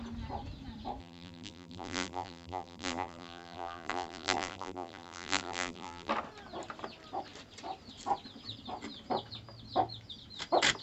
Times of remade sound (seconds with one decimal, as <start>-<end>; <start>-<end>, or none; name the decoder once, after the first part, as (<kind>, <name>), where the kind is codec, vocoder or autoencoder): 1.0-6.1 (vocoder, BigVGAN v2)